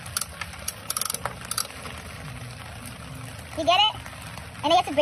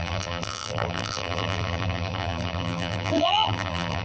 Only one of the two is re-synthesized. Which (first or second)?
second